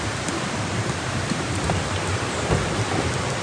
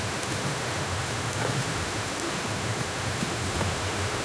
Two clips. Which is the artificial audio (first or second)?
second